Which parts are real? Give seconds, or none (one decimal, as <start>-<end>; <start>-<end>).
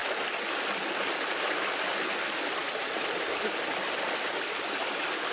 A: 0.0-2.6; 4.7-5.3